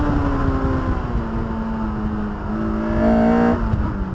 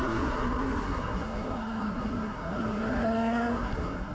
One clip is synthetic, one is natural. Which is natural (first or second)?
first